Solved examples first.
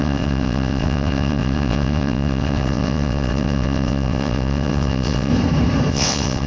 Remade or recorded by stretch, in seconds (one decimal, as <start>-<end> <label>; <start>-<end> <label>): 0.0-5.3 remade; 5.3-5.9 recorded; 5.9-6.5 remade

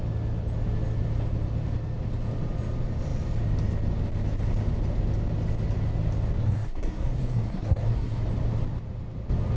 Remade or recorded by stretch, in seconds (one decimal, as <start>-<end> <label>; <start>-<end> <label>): 0.0-6.4 recorded; 6.4-8.2 remade; 8.2-9.6 recorded

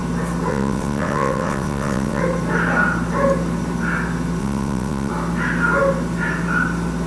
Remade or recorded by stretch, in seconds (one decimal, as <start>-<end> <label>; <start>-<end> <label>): 0.0-0.5 recorded; 0.5-2.2 remade; 2.2-4.4 recorded; 4.4-5.1 remade; 5.1-7.1 recorded

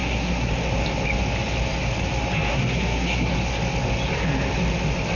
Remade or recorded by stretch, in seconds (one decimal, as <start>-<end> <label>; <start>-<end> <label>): 0.0-0.5 remade; 0.5-2.5 recorded; 2.5-3.3 remade; 3.3-5.2 recorded

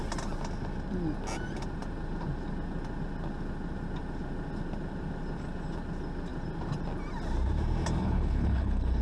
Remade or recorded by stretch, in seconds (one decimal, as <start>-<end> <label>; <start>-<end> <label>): 0.0-8.0 recorded; 8.0-9.0 remade

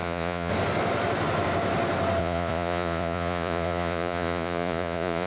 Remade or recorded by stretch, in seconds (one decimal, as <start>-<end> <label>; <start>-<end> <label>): 0.0-0.5 remade; 0.5-2.2 recorded; 2.2-5.3 remade